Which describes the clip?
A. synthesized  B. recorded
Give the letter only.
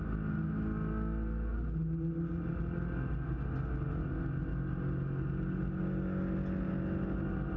B